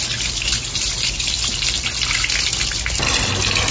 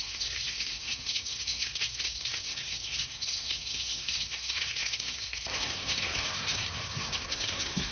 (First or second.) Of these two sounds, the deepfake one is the second